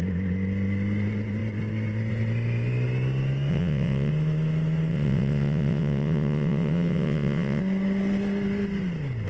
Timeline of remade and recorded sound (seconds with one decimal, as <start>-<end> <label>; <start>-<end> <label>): 0.0-3.5 recorded; 3.5-4.1 remade; 4.1-4.9 recorded; 4.9-7.6 remade; 7.6-9.3 recorded